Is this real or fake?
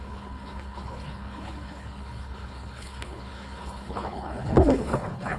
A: fake